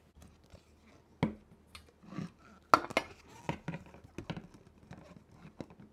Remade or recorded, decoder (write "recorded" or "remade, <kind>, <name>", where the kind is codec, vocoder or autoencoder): recorded